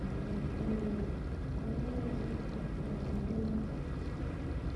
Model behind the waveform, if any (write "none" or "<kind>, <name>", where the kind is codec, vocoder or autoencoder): none